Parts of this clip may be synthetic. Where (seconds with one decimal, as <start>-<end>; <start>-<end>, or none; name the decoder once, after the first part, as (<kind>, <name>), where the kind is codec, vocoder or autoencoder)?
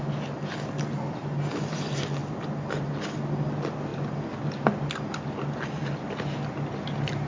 none